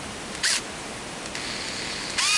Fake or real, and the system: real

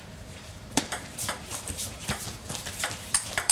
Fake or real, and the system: fake, vocoder, BigVGAN v2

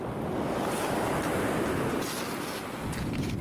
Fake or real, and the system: real